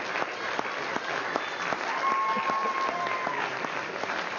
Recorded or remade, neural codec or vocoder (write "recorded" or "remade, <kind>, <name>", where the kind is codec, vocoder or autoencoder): recorded